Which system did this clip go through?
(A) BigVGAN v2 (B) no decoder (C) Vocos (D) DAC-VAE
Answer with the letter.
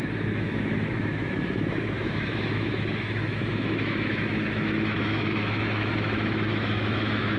D